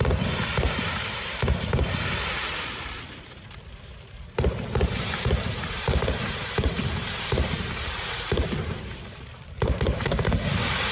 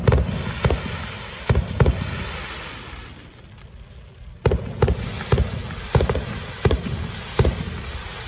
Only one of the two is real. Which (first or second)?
second